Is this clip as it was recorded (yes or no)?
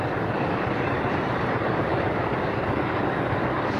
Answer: no